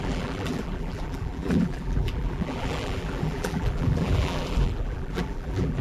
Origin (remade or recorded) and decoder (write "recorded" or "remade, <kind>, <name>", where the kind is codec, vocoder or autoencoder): remade, vocoder, BigVGAN v2